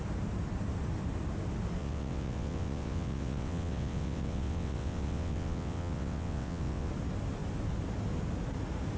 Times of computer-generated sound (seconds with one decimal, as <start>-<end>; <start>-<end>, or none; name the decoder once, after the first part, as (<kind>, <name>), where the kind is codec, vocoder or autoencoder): 1.8-6.9 (vocoder, WaveNeXt)